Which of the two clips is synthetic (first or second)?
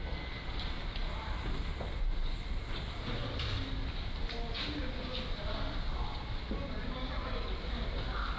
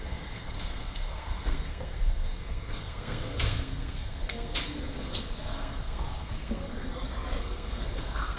second